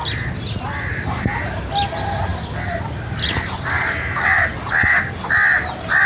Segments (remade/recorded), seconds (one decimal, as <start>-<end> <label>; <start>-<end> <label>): 0.0-6.1 recorded